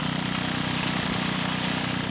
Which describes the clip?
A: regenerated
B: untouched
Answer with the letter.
B